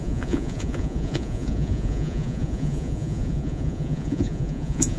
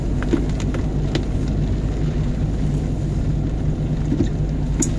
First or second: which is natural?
second